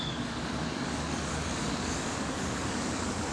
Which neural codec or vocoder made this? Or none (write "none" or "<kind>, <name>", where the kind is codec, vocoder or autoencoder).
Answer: codec, DAC